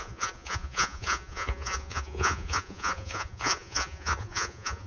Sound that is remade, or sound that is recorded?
remade